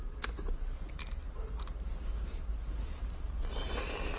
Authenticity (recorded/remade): recorded